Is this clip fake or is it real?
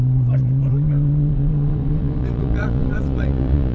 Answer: fake